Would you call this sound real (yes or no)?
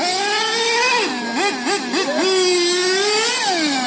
yes